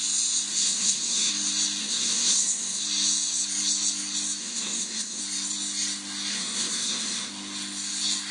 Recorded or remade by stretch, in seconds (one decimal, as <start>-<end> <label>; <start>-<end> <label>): 0.0-0.5 recorded; 0.5-1.3 remade; 1.3-1.8 recorded; 1.8-2.8 remade; 2.8-4.4 recorded; 4.4-5.2 remade; 5.2-6.3 recorded; 6.3-7.3 remade; 7.3-8.3 recorded